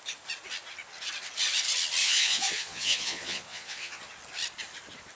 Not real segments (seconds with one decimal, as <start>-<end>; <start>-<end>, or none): 2.0-4.0